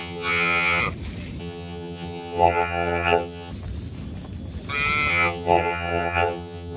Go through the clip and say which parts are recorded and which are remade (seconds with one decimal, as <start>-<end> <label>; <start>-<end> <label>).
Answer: 0.0-0.8 remade; 0.8-1.4 recorded; 1.4-3.5 remade; 3.5-5.1 recorded; 5.1-6.8 remade